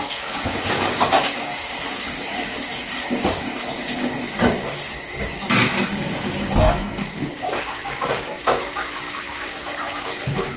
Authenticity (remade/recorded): remade